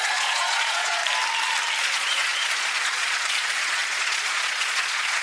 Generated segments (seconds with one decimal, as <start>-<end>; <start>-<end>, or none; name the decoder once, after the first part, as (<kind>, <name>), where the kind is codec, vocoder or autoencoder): 0.0-1.0 (vocoder, Vocos); 1.8-5.2